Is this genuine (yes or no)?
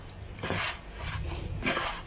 no